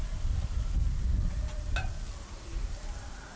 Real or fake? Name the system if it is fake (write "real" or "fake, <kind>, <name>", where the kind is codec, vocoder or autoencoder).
real